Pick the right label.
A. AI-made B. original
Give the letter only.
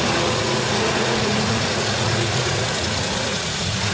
A